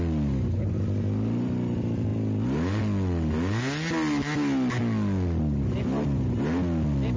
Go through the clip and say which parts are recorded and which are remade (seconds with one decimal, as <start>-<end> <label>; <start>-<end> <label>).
0.0-7.2 recorded